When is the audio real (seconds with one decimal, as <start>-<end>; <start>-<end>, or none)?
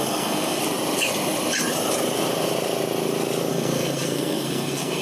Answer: 0.6-3.5